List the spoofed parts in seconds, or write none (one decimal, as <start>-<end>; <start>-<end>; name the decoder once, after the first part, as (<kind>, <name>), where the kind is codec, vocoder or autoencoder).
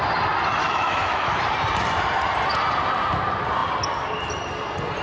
0.6-1.3 (autoencoder, DAC-VAE)